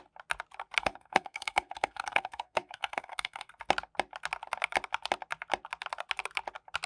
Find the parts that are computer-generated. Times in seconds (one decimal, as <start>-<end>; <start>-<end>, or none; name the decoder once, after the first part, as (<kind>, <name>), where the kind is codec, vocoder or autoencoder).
0.8-3.5 (codec, SNAC)